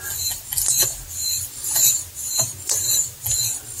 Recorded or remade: recorded